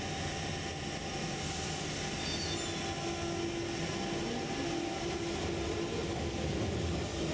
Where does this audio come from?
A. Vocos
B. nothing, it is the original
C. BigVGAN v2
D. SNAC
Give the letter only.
B